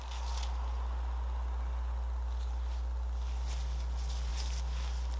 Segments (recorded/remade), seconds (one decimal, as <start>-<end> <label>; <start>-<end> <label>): 0.0-5.2 recorded